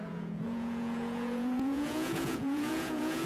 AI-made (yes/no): yes